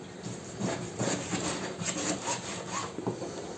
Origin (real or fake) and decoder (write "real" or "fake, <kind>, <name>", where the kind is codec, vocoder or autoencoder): fake, vocoder, BigVGAN v2